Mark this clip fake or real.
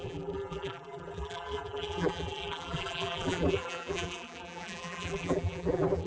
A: fake